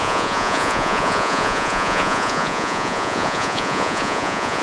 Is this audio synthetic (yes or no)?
yes